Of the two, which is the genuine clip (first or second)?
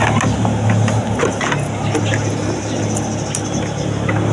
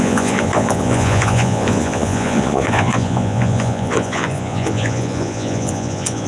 first